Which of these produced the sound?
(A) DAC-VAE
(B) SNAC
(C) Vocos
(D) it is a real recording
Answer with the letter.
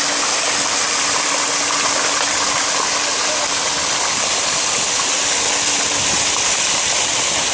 D